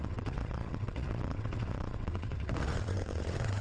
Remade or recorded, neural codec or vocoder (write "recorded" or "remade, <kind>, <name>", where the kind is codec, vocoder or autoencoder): remade, vocoder, WaveNeXt